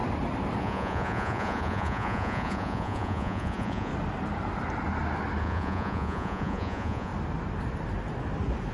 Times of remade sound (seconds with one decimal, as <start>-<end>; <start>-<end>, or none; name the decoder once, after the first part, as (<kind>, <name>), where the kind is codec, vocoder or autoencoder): 0.6-3.9 (vocoder, Vocos); 5.4-7.1